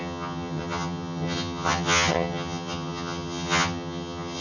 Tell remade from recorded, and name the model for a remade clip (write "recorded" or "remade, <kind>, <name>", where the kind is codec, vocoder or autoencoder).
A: remade, vocoder, HiFi-GAN